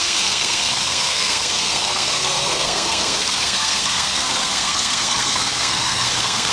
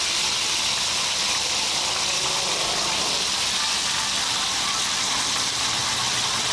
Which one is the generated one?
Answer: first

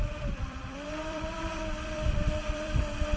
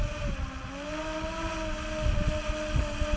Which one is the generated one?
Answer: first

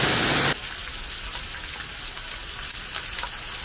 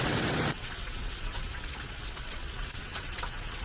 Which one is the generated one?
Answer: second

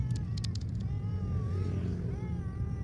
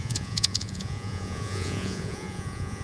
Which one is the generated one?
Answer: second